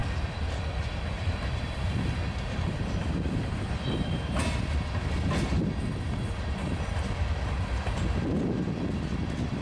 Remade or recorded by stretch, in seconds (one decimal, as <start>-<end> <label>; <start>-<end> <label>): 0.0-4.4 remade; 4.4-9.6 recorded